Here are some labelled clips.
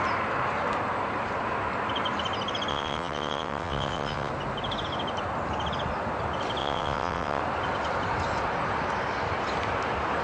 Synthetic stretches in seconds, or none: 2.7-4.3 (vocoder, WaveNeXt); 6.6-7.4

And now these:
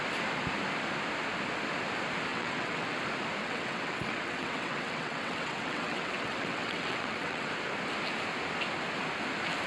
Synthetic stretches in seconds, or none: 2.3-3.0 (vocoder, WaveNeXt); 3.4-7.5

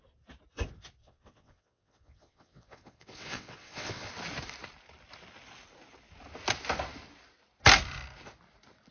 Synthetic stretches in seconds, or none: 1.0-4.1 (vocoder, WaveNeXt)

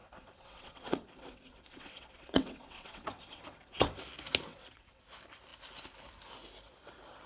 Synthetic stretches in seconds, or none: 0.0-4.0 (vocoder, WaveNeXt); 4.5-5.0

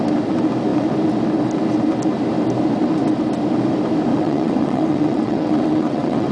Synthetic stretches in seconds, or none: 4.1-6.3 (vocoder, WaveNeXt)

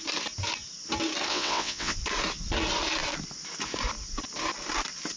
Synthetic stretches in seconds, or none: 1.3-2.0 (vocoder, WaveNeXt)

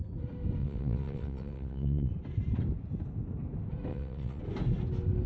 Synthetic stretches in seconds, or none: 0.6-2.1 (vocoder, WaveNeXt); 3.9-4.4